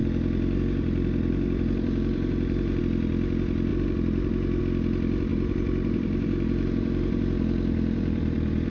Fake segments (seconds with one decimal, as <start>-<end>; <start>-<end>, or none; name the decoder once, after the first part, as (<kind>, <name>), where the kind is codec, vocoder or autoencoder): 0.0-2.8 (vocoder, BigVGAN v2); 3.7-4.6; 5.3-8.7